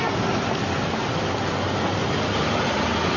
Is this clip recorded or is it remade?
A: recorded